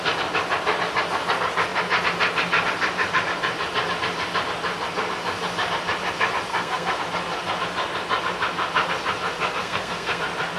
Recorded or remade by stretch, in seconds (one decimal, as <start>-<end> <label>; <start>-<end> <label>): 0.0-6.5 recorded; 6.5-7.0 remade; 7.0-9.6 recorded; 9.6-10.2 remade; 10.2-10.6 recorded